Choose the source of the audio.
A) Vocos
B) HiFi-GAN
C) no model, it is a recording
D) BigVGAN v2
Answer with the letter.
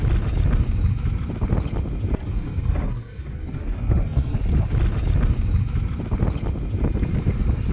C